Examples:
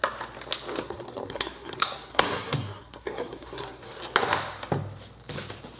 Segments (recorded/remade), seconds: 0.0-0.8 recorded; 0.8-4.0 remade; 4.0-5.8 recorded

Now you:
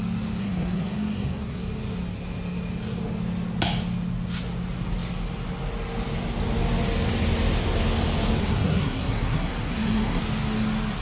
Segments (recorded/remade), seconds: 0.0-0.4 recorded; 0.4-1.6 remade; 1.6-8.4 recorded; 8.4-10.2 remade; 10.2-11.0 recorded

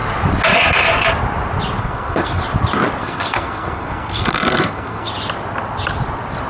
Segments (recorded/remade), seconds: 0.0-1.8 recorded; 1.8-2.4 remade; 2.4-3.0 recorded; 3.0-5.1 remade; 5.1-6.5 recorded

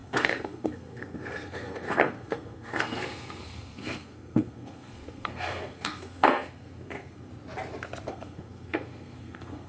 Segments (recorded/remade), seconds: 0.0-7.3 remade; 7.3-8.1 recorded; 8.1-9.7 remade